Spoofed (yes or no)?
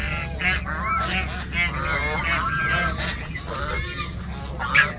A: no